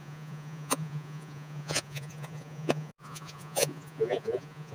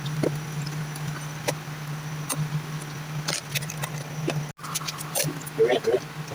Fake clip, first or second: first